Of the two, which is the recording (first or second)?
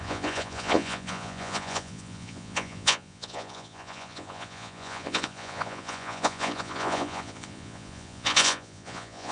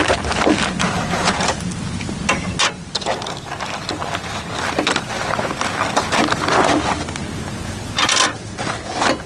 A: second